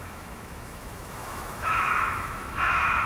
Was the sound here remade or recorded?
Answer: remade